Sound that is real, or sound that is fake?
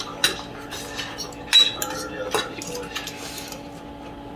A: real